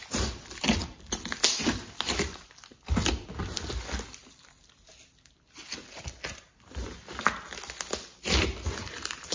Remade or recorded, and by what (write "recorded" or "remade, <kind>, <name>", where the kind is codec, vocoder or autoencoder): recorded